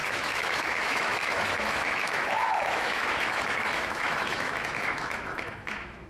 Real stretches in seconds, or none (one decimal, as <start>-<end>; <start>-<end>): none